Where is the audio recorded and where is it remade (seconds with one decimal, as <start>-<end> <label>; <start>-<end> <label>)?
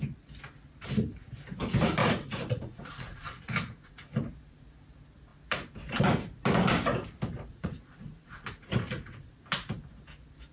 0.0-2.0 recorded; 2.0-3.9 remade; 3.9-7.5 recorded; 7.5-9.3 remade; 9.3-10.5 recorded